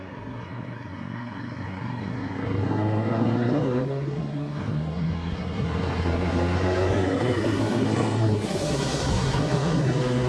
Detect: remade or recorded remade